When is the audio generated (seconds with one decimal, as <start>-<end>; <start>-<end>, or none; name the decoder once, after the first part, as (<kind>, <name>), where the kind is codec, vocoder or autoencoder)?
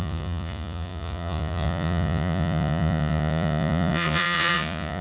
0.0-5.0 (vocoder, Vocos)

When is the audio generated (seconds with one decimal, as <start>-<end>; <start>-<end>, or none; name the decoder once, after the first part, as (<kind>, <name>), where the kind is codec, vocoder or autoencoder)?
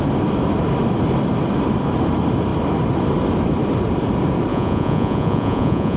4.5-6.0 (vocoder, Vocos)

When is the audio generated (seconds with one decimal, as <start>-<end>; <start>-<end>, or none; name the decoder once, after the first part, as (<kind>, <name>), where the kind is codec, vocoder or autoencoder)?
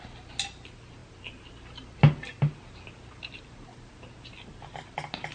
none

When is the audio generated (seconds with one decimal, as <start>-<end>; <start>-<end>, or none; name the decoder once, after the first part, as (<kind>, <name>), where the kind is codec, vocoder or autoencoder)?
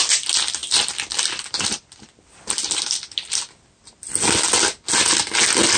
none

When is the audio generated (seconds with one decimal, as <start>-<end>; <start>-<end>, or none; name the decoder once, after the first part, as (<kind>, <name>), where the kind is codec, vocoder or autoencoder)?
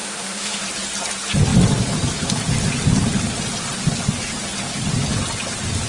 0.0-0.6 (autoencoder, DAC-VAE)